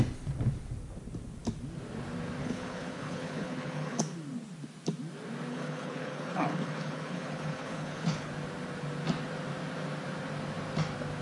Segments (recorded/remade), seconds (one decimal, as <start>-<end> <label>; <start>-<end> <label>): 0.0-2.4 recorded; 2.4-4.0 remade; 4.0-5.5 recorded; 5.5-8.3 remade; 8.3-11.2 recorded